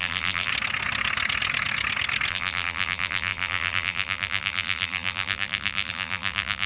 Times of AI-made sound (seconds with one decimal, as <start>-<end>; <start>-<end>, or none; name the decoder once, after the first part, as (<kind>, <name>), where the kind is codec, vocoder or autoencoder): 0.0-0.5 (vocoder, BigVGAN v2); 2.3-6.7